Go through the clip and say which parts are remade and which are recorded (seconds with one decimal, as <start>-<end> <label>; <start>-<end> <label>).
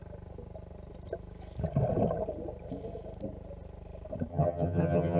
0.0-4.3 recorded; 4.3-5.2 remade